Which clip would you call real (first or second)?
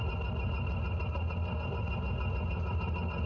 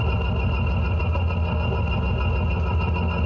second